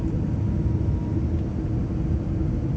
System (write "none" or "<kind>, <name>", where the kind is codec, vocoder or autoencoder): none